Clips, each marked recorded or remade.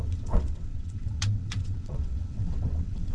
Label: remade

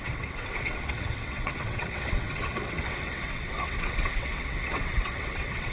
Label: remade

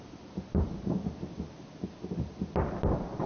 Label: recorded